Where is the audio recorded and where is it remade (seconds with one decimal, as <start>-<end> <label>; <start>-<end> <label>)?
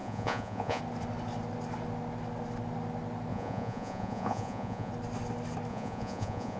0.0-0.8 remade; 0.8-3.3 recorded; 3.3-4.9 remade; 4.9-5.7 recorded; 5.7-6.6 remade